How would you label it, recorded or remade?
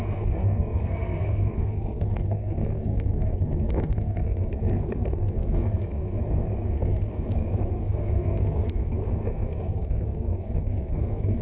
remade